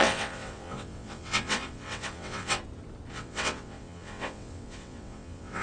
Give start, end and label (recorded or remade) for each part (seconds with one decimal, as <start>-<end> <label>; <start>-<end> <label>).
0.0-2.6 remade; 2.6-3.1 recorded; 3.1-5.6 remade